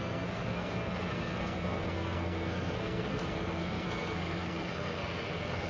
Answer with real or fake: fake